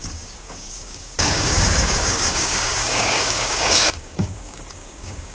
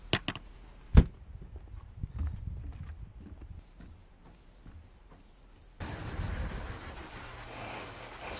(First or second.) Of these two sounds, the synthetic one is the first